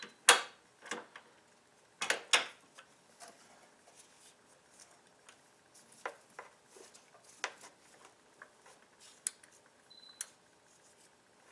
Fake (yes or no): no